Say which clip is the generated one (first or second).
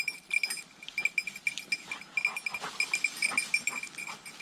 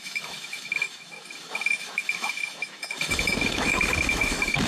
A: second